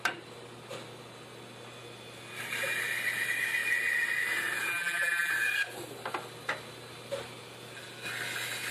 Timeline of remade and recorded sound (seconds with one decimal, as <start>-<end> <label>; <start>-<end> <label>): 0.0-4.7 recorded; 4.7-5.3 remade; 5.3-8.7 recorded